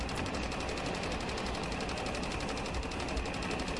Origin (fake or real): real